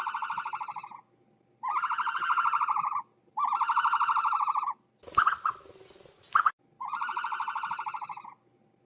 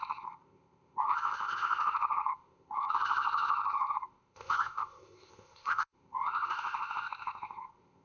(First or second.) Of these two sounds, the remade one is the second